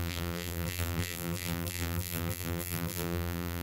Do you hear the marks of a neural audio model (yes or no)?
yes